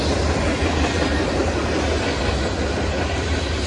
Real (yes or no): yes